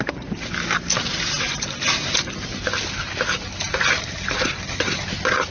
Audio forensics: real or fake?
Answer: real